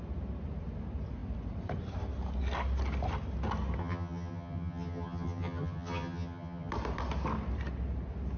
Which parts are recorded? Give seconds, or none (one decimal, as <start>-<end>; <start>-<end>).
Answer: 0.0-3.8; 6.7-8.4